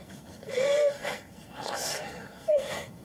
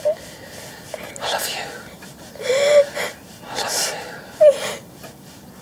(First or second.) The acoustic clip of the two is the second